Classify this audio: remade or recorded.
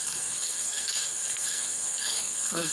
remade